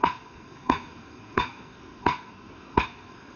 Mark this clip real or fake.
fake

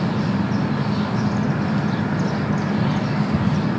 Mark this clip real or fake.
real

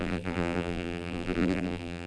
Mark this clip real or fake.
fake